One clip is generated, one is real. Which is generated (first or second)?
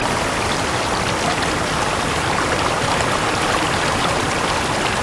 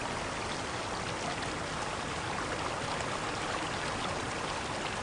first